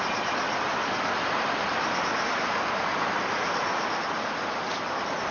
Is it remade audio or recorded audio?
recorded